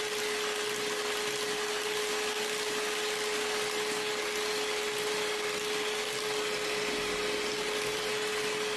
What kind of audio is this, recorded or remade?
recorded